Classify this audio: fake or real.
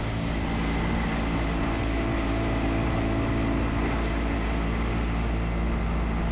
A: real